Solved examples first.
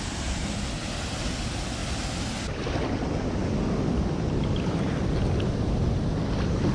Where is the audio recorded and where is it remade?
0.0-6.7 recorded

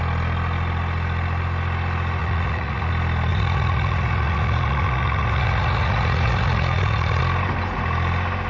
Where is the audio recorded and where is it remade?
0.0-2.2 recorded; 2.2-2.9 remade; 2.9-3.3 recorded; 3.3-7.2 remade; 7.2-8.5 recorded